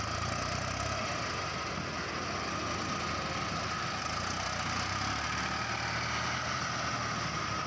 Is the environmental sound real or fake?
real